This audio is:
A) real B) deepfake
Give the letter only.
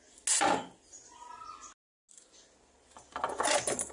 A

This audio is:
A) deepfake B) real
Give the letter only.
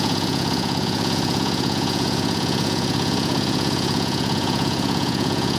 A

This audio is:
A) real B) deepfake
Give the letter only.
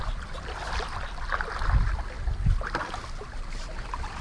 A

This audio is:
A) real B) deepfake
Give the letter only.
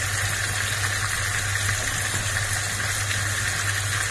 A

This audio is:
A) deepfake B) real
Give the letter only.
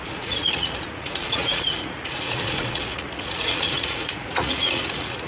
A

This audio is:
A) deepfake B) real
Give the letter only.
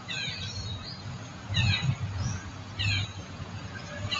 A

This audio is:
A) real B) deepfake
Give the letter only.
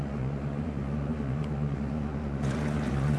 B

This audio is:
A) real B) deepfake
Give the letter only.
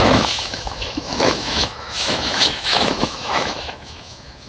B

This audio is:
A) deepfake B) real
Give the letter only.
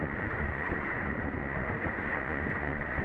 A